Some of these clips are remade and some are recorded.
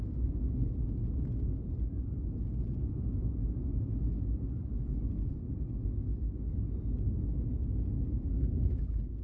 recorded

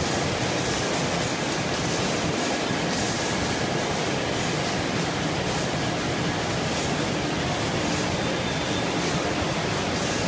recorded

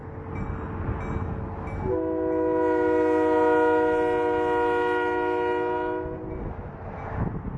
recorded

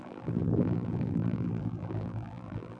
remade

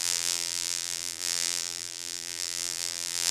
remade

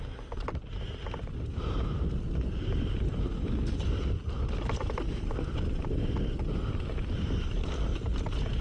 remade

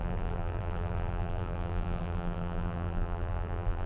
remade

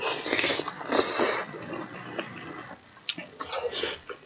recorded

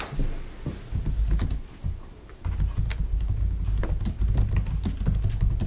recorded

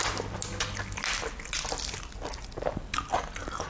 recorded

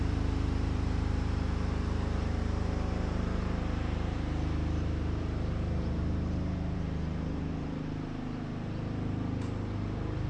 remade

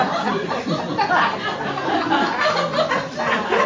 recorded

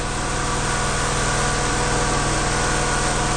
recorded